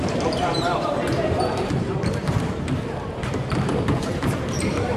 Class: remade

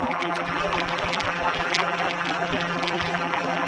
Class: remade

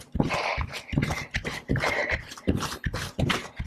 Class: remade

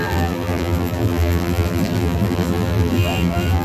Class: remade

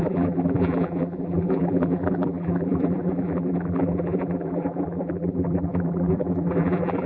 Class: remade